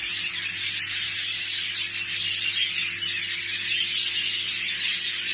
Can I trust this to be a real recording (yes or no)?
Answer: yes